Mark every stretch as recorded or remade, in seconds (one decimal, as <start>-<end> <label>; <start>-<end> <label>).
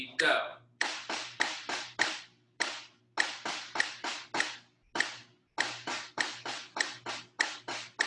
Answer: 0.0-0.5 recorded; 0.5-3.0 remade; 3.0-8.1 recorded